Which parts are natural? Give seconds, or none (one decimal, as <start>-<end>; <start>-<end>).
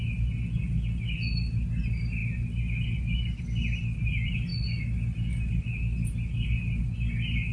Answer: 0.0-7.5